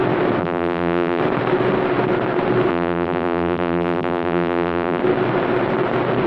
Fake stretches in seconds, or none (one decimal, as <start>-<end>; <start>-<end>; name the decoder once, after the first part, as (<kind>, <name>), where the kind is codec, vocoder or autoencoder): 0.4-1.2 (vocoder, BigVGAN v2); 2.7-5.0